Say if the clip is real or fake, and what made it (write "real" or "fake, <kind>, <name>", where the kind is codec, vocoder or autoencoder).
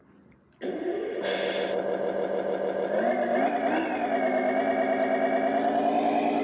real